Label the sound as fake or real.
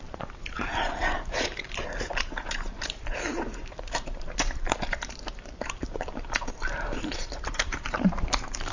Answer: fake